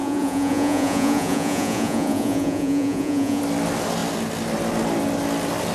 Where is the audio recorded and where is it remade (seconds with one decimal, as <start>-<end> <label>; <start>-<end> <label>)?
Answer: 0.0-3.4 remade; 3.4-5.7 recorded